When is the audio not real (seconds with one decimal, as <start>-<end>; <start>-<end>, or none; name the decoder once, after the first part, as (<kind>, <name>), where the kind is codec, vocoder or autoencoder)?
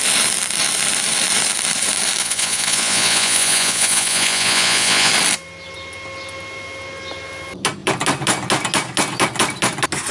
2.2-5.1 (vocoder, Vocos)